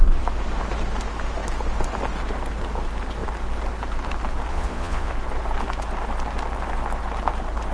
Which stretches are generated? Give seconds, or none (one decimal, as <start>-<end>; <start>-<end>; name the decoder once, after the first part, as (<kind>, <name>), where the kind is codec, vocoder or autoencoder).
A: 4.5-5.1 (vocoder, Vocos)